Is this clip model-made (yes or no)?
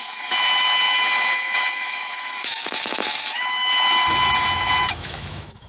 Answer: yes